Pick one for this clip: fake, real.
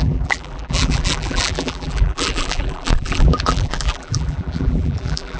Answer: fake